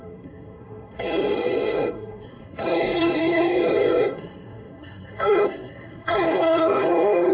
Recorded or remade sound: remade